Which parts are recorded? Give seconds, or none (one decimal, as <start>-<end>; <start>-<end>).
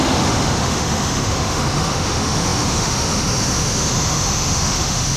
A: none